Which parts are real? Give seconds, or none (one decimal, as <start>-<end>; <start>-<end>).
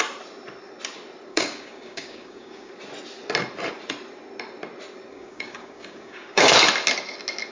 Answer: 0.0-1.3; 2.7-5.1; 6.5-7.5